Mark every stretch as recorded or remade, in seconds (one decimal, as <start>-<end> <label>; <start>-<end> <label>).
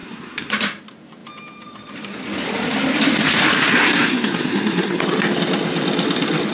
0.0-0.5 remade; 0.5-3.7 recorded; 3.7-5.0 remade; 5.0-6.5 recorded